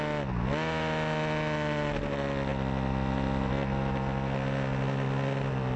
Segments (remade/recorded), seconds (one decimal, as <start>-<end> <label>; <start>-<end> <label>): 0.0-5.8 recorded